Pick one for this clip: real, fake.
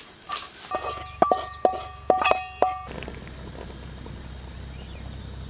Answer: real